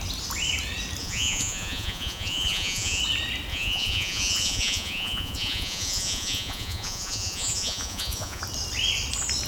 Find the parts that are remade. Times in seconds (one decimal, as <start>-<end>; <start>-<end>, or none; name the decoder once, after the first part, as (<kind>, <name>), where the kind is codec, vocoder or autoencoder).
1.0-3.0 (vocoder, Vocos); 3.5-8.4